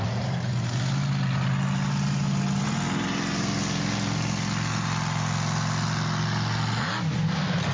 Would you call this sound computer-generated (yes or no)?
no